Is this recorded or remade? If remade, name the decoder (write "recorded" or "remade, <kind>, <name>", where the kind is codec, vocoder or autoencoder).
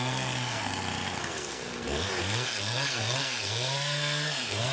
remade, codec, SNAC